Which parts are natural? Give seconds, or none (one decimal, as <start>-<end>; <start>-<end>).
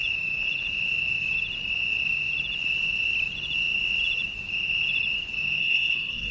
0.0-5.6